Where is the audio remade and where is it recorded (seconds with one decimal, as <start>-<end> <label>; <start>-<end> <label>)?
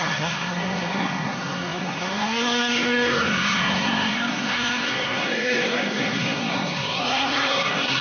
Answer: 0.0-8.0 remade